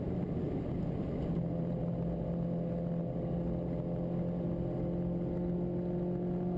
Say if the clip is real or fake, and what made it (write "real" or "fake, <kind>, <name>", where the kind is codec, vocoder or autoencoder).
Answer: real